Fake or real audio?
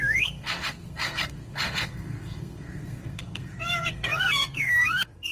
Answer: fake